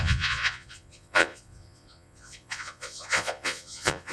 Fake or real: fake